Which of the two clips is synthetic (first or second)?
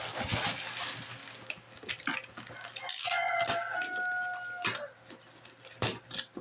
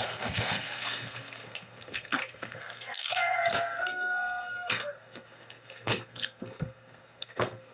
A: second